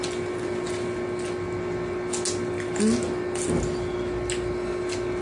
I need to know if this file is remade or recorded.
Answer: recorded